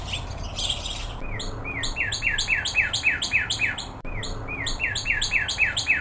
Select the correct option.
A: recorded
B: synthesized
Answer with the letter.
A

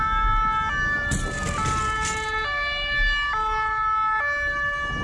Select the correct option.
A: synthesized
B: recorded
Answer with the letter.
B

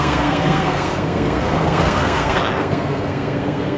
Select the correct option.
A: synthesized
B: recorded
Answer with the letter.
A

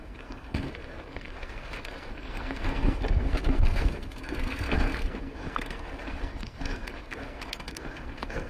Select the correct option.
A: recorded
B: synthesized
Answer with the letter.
B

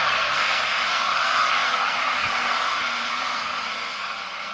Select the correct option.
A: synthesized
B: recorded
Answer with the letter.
A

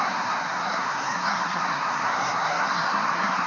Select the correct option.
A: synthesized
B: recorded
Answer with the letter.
A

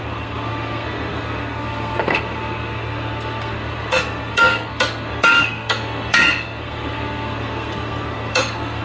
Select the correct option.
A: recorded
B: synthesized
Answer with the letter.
B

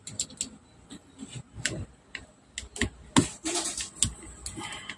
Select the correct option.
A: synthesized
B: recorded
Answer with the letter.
B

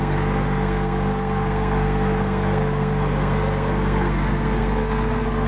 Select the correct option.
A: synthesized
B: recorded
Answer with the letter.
A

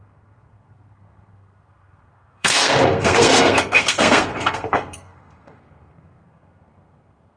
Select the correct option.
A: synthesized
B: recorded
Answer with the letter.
A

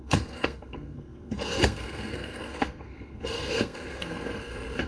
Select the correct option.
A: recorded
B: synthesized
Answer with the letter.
B